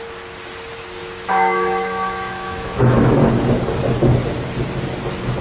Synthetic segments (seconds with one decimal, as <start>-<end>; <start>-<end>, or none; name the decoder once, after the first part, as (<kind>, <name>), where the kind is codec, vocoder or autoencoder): 1.0-3.2 (autoencoder, DAC-VAE)

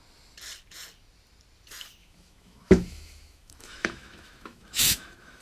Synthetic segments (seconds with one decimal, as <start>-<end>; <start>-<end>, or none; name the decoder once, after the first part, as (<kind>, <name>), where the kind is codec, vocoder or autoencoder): 2.0-5.4 (autoencoder, DAC-VAE)

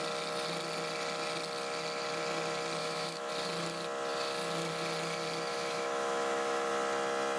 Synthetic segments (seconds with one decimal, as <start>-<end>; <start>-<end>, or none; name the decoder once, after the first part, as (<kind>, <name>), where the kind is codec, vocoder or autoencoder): 2.8-3.3 (autoencoder, DAC-VAE); 5.5-6.7

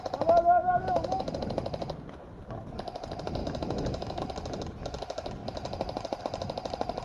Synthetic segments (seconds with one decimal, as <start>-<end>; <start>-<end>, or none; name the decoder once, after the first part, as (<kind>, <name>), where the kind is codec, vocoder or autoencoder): 0.6-1.3 (autoencoder, DAC-VAE); 3.4-4.2

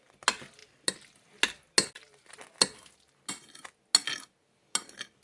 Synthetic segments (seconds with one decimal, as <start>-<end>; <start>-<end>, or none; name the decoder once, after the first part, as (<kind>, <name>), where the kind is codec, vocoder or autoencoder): none

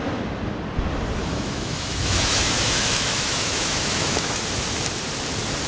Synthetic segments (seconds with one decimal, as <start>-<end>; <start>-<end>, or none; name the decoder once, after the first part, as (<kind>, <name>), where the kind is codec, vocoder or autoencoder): 1.2-4.4 (autoencoder, DAC-VAE)

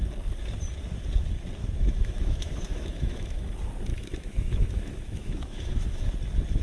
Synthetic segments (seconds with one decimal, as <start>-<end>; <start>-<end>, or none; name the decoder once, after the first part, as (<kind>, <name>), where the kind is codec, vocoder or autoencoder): 1.6-3.5 (autoencoder, DAC-VAE); 3.9-6.0

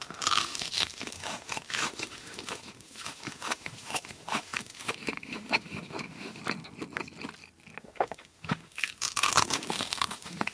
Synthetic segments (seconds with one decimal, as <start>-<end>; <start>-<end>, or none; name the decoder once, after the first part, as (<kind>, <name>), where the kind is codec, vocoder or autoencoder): 0.0-6.4 (autoencoder, DAC-VAE); 7.8-10.5